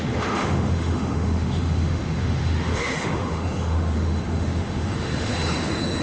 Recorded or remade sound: remade